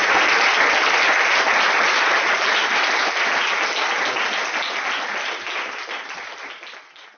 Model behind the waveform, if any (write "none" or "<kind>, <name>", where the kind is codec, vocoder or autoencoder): none